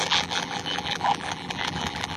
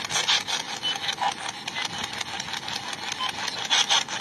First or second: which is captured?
second